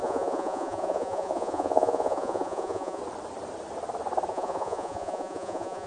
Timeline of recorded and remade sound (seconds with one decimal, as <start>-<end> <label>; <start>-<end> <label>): 0.0-3.0 remade; 3.0-4.3 recorded; 4.3-5.9 remade